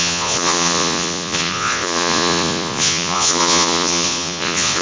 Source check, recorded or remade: remade